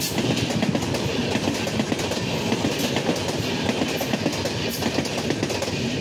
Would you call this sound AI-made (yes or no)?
no